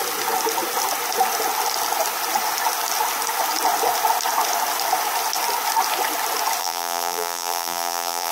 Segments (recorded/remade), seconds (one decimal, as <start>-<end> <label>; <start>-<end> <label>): 0.0-6.6 recorded; 6.6-8.3 remade